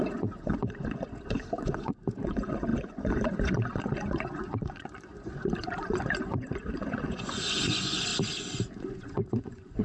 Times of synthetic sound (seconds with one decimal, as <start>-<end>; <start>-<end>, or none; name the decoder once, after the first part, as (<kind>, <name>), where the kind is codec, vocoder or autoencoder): 0.0-8.1 (vocoder, Vocos); 8.8-9.8